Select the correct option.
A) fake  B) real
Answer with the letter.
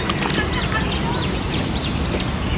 B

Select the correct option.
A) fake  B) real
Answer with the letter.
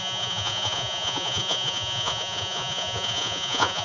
A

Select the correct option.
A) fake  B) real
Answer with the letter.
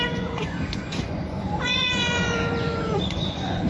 A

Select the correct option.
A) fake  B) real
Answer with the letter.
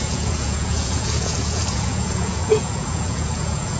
A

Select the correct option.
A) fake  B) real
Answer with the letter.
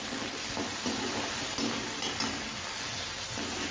B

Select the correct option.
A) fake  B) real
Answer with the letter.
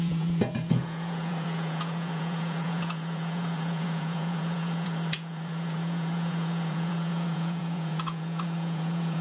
A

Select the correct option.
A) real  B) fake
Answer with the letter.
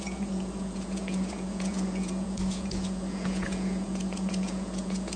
B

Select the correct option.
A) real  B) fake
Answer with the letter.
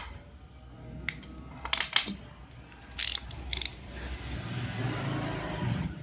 A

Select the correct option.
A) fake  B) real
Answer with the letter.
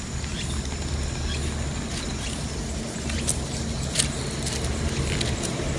B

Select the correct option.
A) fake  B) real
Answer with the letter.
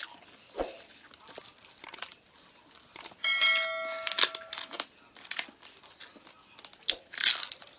B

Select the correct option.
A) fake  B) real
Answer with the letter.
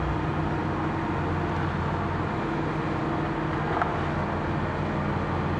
B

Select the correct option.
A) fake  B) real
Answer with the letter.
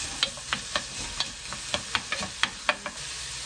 B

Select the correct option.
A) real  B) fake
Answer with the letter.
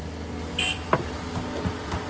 A